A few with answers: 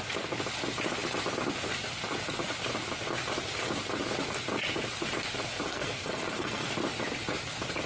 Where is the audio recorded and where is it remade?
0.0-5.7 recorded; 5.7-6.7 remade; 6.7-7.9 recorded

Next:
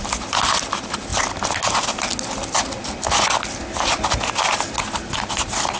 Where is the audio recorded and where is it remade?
0.0-5.8 recorded

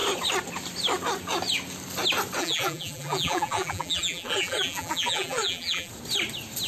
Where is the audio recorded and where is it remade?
0.0-2.4 recorded; 2.4-5.9 remade; 5.9-6.7 recorded

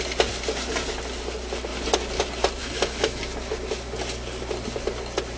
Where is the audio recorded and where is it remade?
0.0-2.6 recorded; 2.6-3.2 remade; 3.2-5.4 recorded

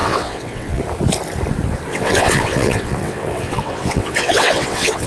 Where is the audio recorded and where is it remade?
0.0-0.8 remade; 0.8-1.9 recorded; 1.9-5.1 remade

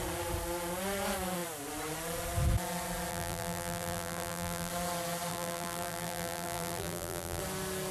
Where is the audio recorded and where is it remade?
0.0-3.1 recorded; 3.1-4.7 remade; 4.7-5.3 recorded; 5.3-7.4 remade; 7.4-7.9 recorded